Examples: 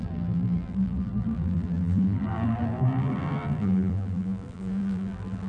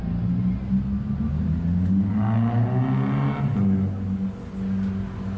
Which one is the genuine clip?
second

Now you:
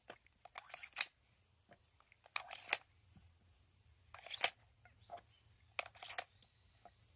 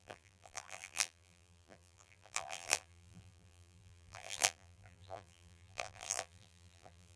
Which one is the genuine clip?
first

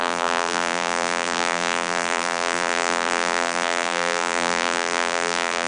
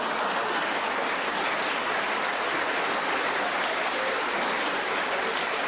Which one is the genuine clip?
second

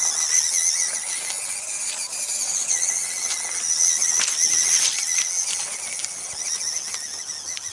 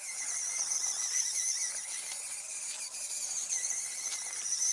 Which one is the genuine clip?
first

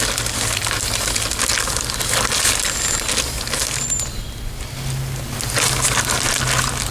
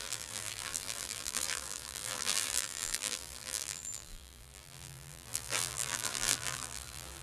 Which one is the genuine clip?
first